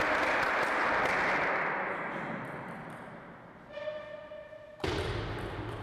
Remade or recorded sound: recorded